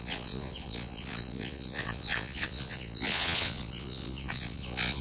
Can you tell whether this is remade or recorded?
remade